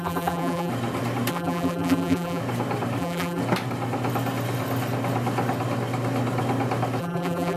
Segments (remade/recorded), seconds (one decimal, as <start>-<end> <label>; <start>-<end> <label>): 0.0-0.7 remade; 0.7-1.3 recorded; 1.3-2.4 remade; 2.4-3.0 recorded; 3.0-3.4 remade; 3.4-7.0 recorded; 7.0-7.6 remade